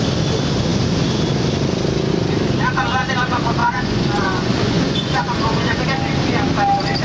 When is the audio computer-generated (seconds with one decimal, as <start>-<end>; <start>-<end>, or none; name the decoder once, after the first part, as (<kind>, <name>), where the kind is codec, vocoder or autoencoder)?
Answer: 3.6-5.8 (vocoder, Vocos)